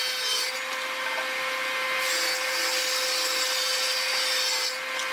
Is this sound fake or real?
real